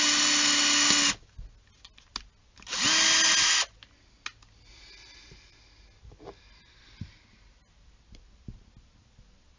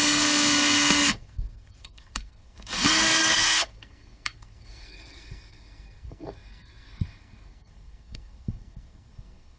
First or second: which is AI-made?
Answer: second